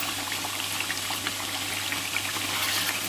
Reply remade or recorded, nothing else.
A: recorded